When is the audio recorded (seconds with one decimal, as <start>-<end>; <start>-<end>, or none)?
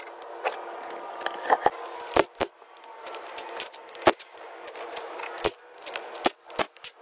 0.0-3.8; 5.2-7.0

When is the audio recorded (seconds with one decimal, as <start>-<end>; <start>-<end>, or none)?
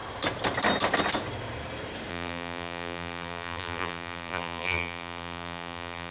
0.0-2.1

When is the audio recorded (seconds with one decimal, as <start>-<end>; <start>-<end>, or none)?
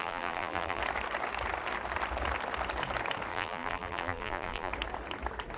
0.8-3.3; 4.7-5.6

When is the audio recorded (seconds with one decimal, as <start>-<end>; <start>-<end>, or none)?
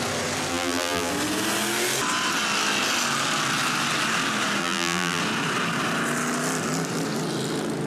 0.0-0.5; 1.1-4.6; 5.2-7.9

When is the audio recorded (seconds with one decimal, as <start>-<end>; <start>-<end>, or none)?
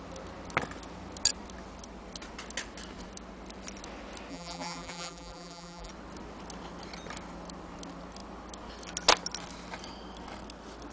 0.0-4.3; 5.9-10.9